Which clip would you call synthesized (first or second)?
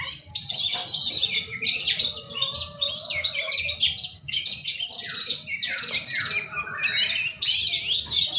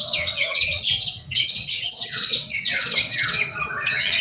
second